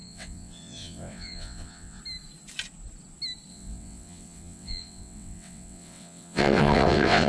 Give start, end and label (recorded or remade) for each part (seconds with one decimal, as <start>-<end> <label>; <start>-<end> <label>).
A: 0.0-2.0 remade; 2.0-3.5 recorded; 3.5-7.3 remade